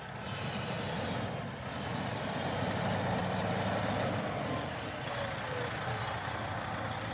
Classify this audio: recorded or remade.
recorded